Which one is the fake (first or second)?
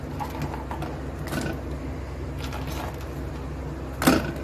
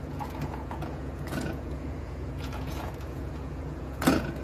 second